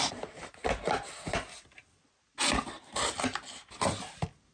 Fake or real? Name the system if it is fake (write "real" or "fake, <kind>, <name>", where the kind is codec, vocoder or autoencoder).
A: real